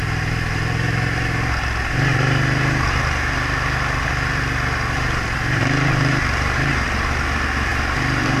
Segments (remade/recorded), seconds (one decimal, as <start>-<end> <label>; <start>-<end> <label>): 0.0-8.4 recorded